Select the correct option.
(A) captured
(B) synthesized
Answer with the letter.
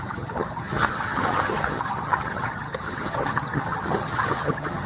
B